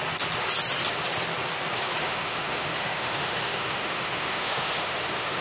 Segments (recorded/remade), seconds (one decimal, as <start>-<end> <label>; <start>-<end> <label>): 0.0-2.0 recorded; 2.0-5.4 remade